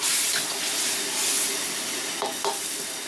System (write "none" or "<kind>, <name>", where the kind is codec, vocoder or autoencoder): none